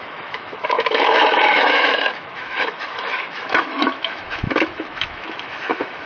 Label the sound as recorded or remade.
remade